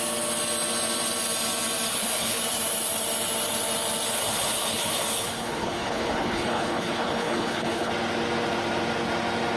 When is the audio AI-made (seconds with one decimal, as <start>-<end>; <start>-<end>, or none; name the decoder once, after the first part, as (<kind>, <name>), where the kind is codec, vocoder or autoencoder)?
1.9-2.4 (codec, HILCodec); 4.1-7.9